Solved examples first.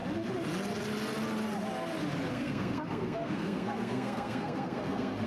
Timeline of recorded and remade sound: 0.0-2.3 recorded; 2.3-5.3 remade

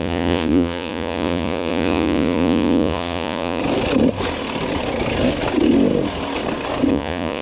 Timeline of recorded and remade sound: 0.0-3.6 remade; 3.6-6.9 recorded; 6.9-7.4 remade

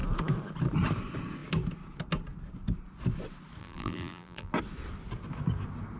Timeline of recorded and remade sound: 0.0-3.6 recorded; 3.6-4.5 remade; 4.5-6.0 recorded

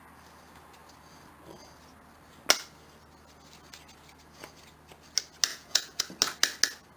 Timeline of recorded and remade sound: 0.0-5.5 recorded; 5.5-6.0 remade; 6.0-7.0 recorded